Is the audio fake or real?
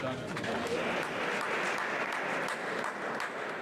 real